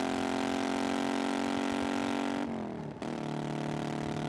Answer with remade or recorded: recorded